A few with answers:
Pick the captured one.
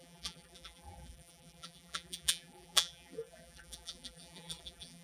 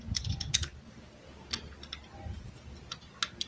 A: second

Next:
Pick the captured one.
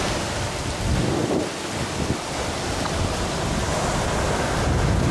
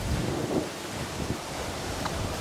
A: first